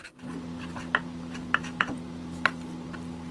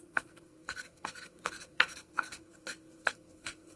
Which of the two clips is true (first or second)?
first